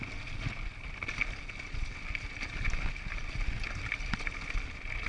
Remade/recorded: recorded